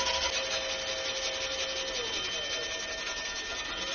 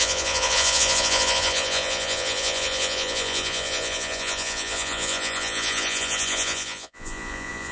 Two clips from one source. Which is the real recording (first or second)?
first